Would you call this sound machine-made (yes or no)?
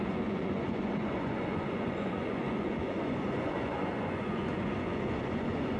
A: yes